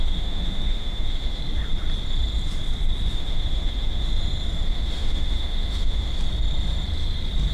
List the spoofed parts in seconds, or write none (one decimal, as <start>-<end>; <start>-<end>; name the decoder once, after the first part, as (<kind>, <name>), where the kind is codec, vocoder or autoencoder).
0.0-1.4 (autoencoder, DAC-VAE); 3.1-4.1; 4.7-6.1